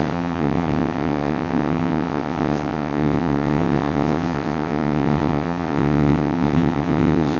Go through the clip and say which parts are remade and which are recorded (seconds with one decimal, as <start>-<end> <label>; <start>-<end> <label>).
0.0-7.4 remade